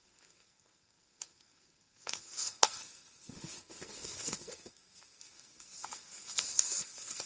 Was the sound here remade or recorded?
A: remade